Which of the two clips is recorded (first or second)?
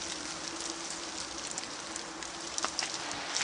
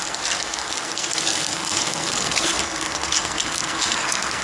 first